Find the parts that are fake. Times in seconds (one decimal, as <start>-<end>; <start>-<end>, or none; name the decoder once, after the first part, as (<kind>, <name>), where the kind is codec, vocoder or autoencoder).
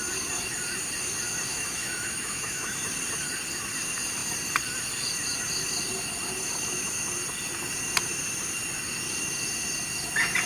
1.5-2.8 (autoencoder, DAC-VAE)